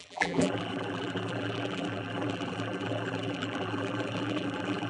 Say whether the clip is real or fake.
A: fake